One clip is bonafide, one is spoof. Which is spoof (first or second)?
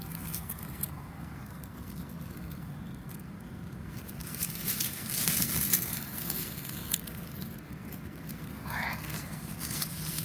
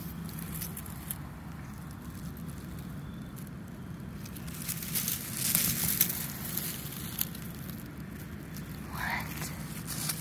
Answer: first